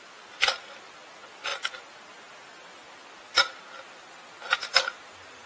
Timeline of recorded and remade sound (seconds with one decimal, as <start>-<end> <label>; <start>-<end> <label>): 0.0-5.5 recorded